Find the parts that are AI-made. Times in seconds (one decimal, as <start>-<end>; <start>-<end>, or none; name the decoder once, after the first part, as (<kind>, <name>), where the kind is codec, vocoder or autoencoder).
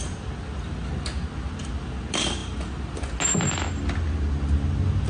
none